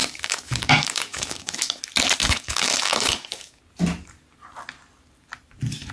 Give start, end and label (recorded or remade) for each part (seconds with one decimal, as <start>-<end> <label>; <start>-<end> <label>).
0.0-1.8 remade; 1.8-2.2 recorded; 2.2-3.6 remade; 3.6-5.9 recorded